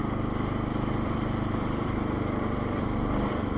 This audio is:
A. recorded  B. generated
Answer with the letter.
B